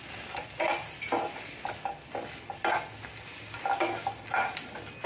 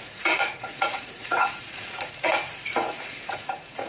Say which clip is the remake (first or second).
second